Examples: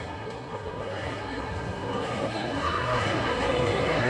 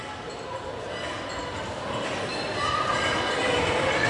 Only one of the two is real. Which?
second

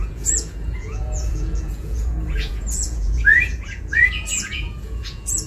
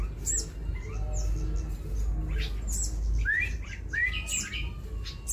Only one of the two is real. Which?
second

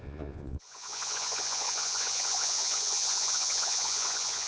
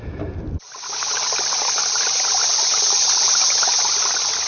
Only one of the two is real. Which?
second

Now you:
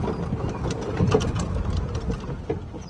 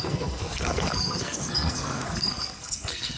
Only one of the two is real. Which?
first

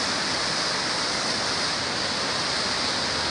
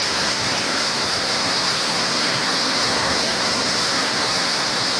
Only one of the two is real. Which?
first